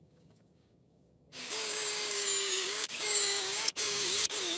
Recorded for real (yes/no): no